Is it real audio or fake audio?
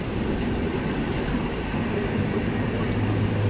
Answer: real